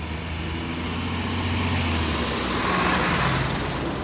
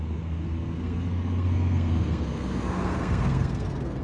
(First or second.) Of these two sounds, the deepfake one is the second